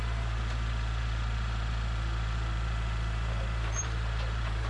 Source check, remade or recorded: remade